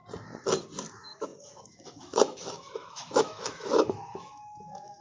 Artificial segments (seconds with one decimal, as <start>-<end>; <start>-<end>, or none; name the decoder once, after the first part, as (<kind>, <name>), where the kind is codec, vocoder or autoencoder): 0.9-5.0 (autoencoder, DAC-VAE)